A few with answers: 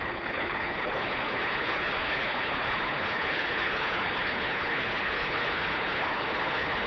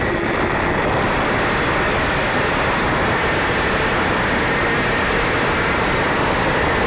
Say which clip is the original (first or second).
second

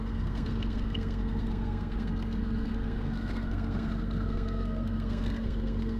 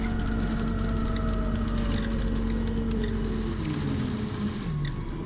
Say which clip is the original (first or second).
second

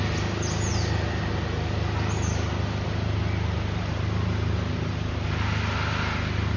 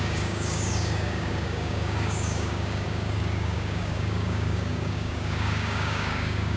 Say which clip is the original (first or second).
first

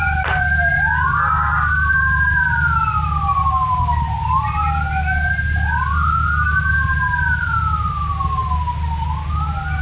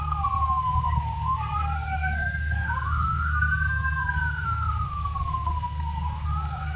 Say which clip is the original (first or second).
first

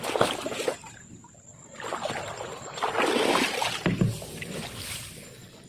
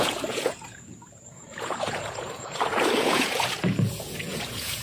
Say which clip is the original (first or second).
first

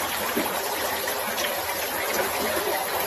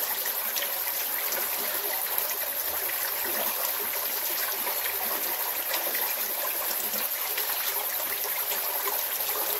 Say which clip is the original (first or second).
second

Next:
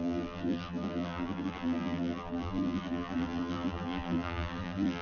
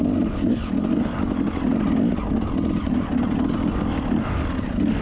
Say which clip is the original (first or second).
second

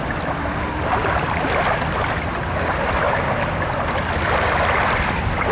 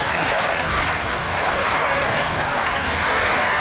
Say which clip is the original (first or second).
first